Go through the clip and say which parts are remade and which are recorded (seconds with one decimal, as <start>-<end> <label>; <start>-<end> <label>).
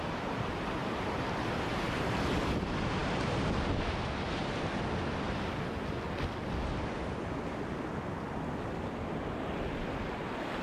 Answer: 0.0-10.6 recorded